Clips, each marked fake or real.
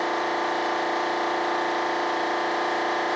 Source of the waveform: fake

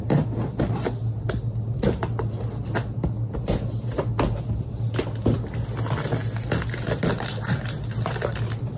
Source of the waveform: real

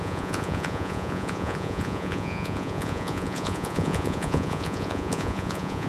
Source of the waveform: fake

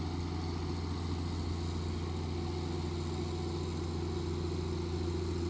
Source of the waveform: real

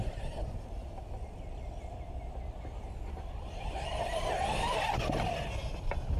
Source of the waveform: real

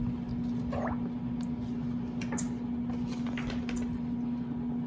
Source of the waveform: real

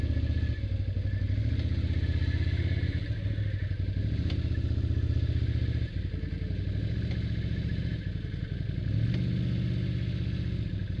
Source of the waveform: real